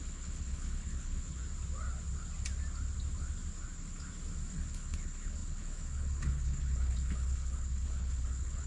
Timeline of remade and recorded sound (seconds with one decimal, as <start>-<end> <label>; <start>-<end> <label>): 0.0-1.4 remade; 1.4-4.5 recorded; 4.5-8.7 remade